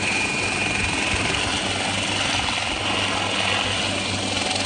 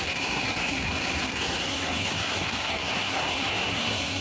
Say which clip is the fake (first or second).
second